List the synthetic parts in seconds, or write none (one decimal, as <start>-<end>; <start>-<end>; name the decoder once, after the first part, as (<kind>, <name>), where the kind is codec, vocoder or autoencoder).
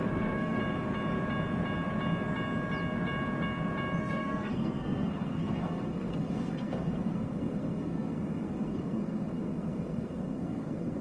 0.0-0.6 (codec, SNAC); 4.0-11.0